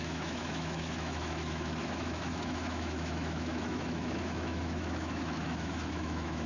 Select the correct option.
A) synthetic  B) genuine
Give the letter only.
A